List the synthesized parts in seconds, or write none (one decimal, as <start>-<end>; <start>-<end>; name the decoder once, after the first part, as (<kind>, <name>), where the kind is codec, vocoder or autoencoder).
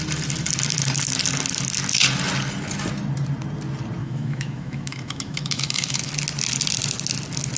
4.0-6.1 (autoencoder, DAC-VAE)